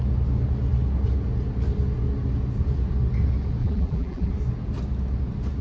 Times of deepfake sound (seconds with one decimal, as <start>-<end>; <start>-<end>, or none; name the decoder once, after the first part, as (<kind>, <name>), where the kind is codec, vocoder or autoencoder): 3.6-4.3 (vocoder, BigVGAN v2)